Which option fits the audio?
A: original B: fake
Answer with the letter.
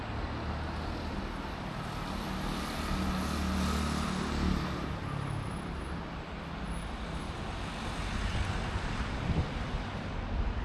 A